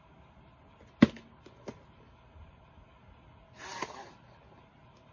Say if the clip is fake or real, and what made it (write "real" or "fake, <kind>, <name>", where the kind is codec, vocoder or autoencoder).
real